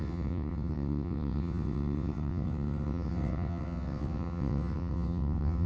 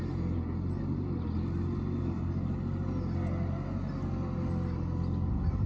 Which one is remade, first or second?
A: first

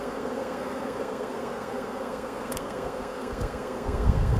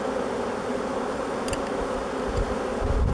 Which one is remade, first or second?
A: first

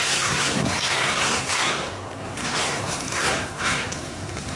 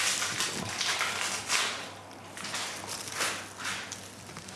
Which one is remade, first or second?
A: first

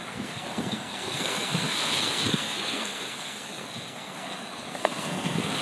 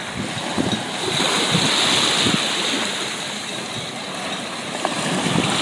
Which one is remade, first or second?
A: first